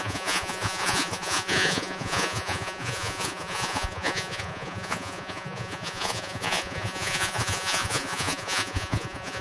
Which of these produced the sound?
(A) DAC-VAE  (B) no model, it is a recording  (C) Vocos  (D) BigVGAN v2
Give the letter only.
C